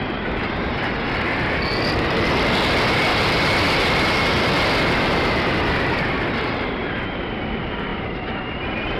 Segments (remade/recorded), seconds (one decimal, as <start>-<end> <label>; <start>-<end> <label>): 0.0-9.0 recorded